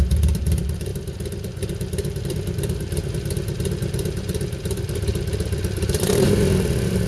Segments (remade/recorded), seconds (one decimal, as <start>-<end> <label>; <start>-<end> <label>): 0.0-3.0 remade; 3.0-3.8 recorded; 3.8-5.1 remade; 5.1-5.6 recorded; 5.6-7.1 remade